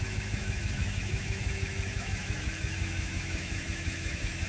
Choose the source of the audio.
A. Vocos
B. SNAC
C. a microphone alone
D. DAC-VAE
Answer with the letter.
D